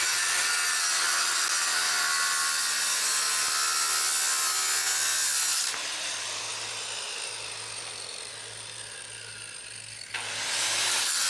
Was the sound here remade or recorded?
recorded